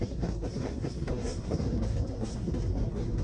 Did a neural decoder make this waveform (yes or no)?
yes